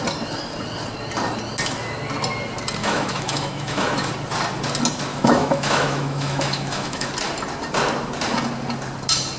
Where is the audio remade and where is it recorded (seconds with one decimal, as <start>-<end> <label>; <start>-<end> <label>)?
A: 0.0-2.8 recorded; 2.8-4.1 remade; 4.1-5.1 recorded; 5.1-7.1 remade; 7.1-9.4 recorded